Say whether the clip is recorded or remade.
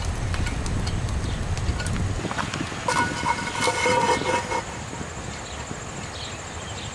recorded